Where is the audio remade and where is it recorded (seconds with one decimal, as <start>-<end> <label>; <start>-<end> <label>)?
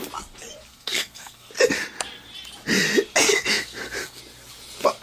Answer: 0.0-0.7 recorded; 0.7-1.5 remade; 1.5-3.3 recorded; 3.3-4.2 remade; 4.2-5.0 recorded